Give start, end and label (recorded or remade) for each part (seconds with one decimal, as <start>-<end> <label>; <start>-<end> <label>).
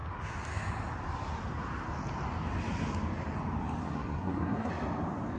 0.0-3.8 recorded; 3.8-4.7 remade; 4.7-5.4 recorded